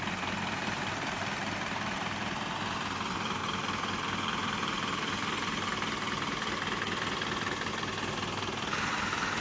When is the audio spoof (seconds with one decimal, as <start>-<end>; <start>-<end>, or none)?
none